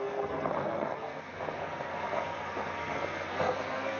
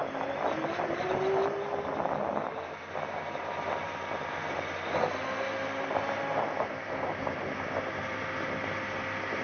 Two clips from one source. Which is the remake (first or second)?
first